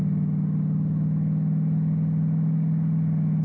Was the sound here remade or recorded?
recorded